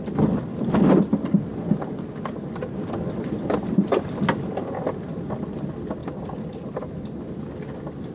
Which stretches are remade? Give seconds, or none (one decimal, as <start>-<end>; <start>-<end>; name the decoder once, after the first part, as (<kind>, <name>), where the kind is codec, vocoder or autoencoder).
none